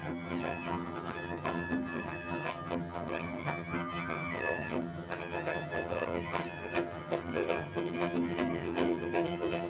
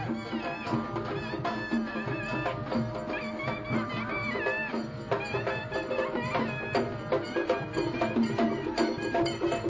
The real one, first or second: second